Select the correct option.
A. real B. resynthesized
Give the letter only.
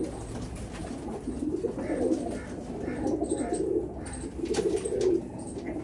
A